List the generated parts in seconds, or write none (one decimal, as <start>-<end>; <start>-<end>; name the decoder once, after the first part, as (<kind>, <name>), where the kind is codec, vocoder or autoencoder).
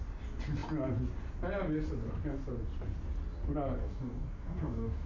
3.8-5.1 (codec, DAC)